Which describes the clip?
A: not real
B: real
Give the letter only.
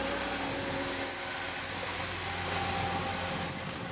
B